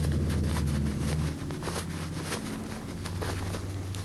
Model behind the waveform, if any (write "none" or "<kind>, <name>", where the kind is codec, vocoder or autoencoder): none